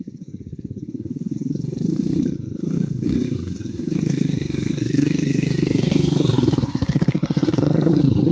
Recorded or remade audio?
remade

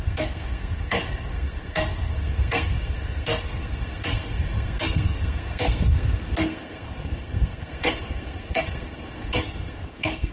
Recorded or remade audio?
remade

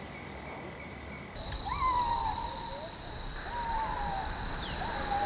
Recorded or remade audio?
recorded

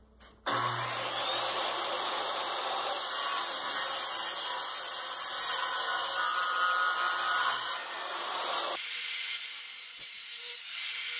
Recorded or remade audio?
recorded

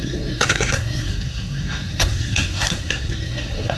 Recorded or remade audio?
remade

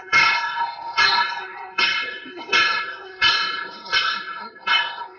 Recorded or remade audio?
remade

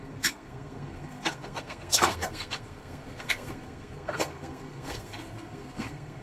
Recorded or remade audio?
remade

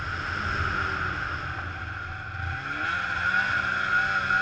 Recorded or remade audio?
recorded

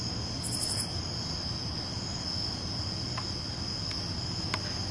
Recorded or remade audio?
recorded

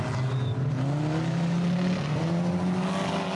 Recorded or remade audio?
recorded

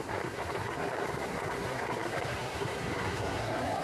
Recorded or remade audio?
remade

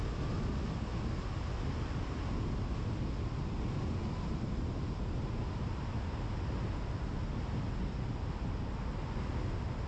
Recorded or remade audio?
recorded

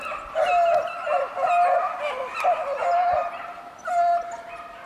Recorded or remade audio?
recorded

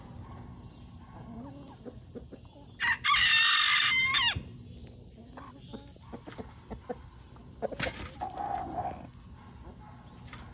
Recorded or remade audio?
recorded